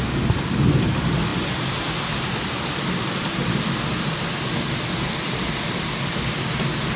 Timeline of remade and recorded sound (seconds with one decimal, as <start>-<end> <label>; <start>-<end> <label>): 0.0-7.0 recorded